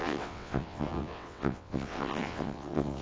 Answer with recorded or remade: remade